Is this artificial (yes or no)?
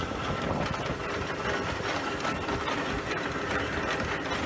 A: no